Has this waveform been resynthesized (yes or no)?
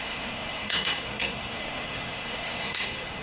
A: yes